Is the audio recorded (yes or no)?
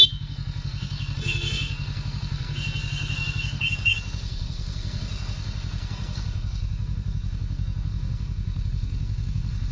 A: no